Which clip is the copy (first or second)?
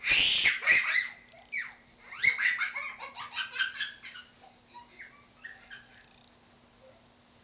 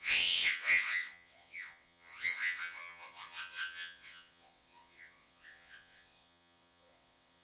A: second